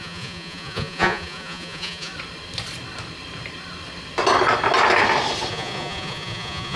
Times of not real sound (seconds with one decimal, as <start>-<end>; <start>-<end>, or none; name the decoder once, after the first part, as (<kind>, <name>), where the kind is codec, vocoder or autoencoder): 0.0-2.1 (vocoder, Vocos); 5.5-6.8